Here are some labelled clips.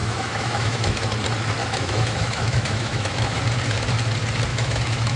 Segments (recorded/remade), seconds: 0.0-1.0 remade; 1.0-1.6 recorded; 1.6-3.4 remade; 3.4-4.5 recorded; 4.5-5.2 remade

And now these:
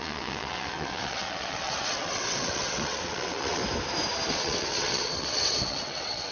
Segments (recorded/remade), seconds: 0.0-3.6 remade; 3.6-4.3 recorded; 4.3-6.3 remade

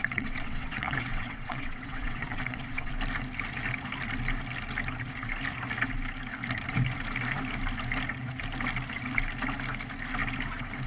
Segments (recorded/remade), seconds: 0.0-2.9 remade; 2.9-10.9 recorded

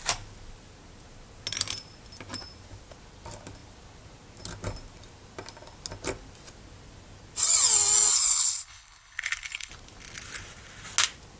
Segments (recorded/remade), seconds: 0.0-8.1 recorded; 8.1-9.7 remade; 9.7-11.4 recorded